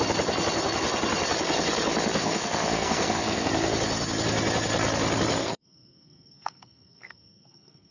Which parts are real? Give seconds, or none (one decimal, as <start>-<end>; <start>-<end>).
0.0-2.2; 3.5-5.4